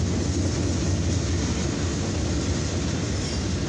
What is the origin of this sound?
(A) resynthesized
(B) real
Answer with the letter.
B